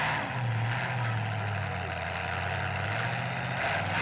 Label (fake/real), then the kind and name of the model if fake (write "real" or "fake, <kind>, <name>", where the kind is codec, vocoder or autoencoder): real